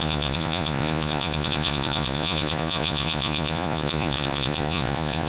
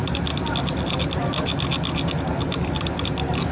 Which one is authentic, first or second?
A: second